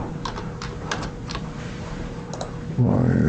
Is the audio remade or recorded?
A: remade